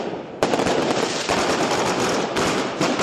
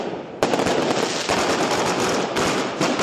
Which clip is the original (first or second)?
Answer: second